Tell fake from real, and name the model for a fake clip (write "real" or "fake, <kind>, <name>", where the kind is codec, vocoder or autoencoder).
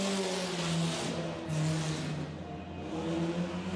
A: real